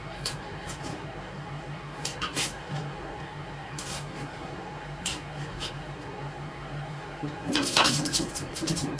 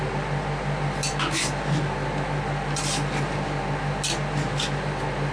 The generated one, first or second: first